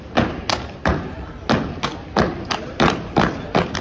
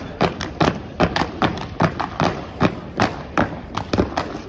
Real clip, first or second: first